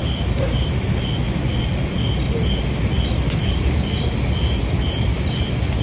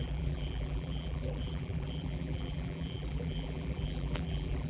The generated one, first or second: second